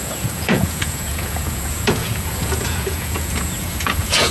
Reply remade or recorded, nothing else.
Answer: remade